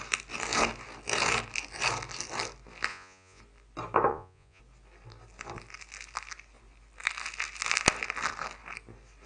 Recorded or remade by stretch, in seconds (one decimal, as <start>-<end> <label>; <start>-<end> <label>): 0.0-2.9 recorded; 2.9-3.4 remade; 3.4-4.1 recorded; 4.1-4.6 remade; 4.6-9.3 recorded